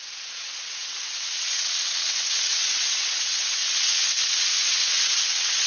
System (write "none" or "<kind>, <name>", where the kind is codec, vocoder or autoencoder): vocoder, WaveNeXt